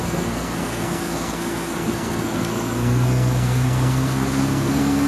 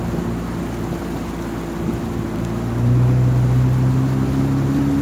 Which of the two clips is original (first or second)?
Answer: second